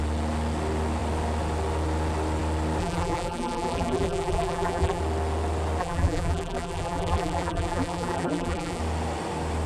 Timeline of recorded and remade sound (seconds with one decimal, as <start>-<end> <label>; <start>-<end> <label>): 0.0-2.8 recorded; 2.8-5.0 remade; 5.0-5.8 recorded; 5.8-8.8 remade; 8.8-9.7 recorded